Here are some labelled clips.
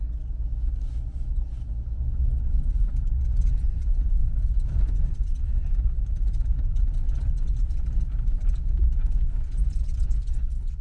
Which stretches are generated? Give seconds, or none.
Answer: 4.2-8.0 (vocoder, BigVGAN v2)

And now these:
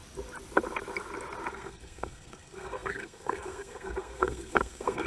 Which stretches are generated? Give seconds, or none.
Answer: 1.5-5.1 (codec, SNAC)

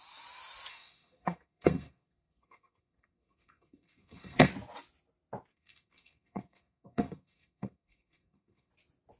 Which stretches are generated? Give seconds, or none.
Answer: 0.7-4.5 (codec, SNAC); 5.5-8.7

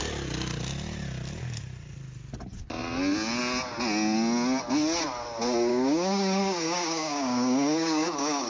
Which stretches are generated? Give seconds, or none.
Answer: 5.7-8.5 (codec, DAC)

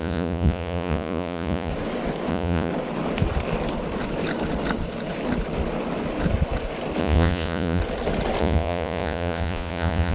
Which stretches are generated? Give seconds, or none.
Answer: 0.0-1.7 (vocoder, Vocos); 2.3-2.7; 7.0-7.8; 8.4-10.1

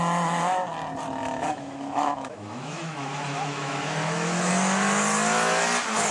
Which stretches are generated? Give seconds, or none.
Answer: 1.2-4.5 (autoencoder, DAC-VAE)

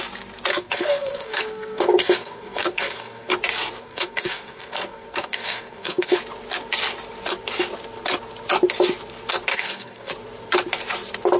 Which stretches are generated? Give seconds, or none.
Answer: 0.5-3.3 (codec, SNAC); 3.8-6.2; 9.5-10.1